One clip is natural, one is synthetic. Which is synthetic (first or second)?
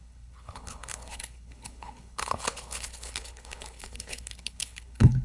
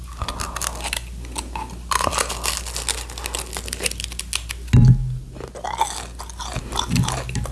first